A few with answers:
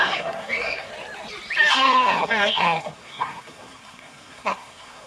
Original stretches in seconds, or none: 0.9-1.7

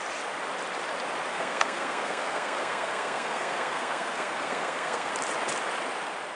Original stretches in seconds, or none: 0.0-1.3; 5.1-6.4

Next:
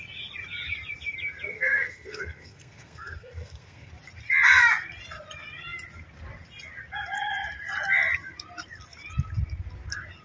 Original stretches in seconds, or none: 0.0-1.5; 3.9-10.2

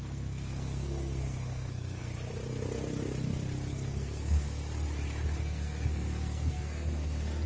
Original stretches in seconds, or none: 2.1-3.7; 4.6-5.4

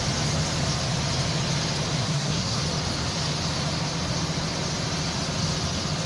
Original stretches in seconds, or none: 0.0-2.0; 2.6-6.1

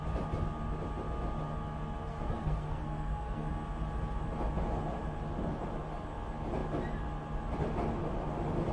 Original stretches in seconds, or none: 0.0-2.1; 3.5-8.7

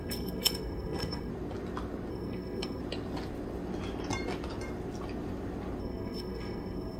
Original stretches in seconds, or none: 1.3-2.1; 2.8-5.8

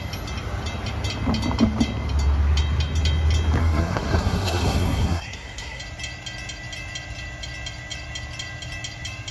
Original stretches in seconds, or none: 0.0-3.6; 5.8-9.3